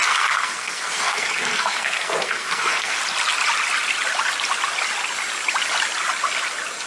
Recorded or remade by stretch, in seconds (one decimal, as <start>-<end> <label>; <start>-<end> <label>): 0.0-3.0 remade; 3.0-6.9 recorded